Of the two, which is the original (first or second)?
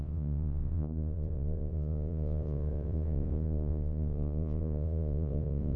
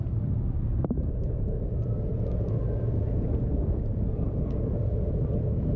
second